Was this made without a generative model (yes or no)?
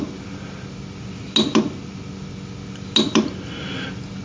yes